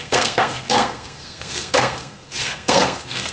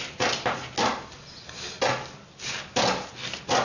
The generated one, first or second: first